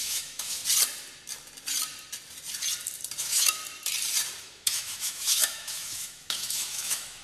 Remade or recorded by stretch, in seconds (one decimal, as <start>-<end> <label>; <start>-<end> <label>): 0.0-0.6 remade; 0.6-3.2 recorded; 3.2-3.6 remade; 3.6-4.4 recorded; 4.4-7.2 remade